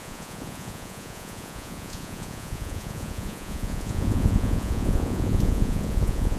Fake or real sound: fake